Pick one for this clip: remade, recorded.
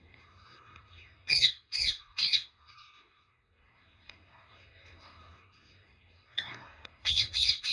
remade